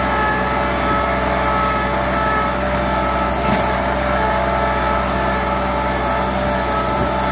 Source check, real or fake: real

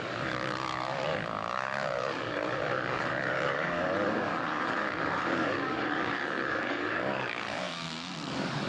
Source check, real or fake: fake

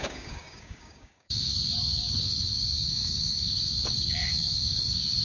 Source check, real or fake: fake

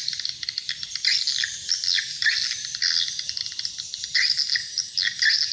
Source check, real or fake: real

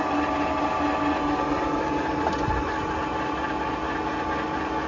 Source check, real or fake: real